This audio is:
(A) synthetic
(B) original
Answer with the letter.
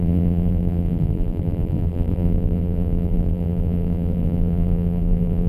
A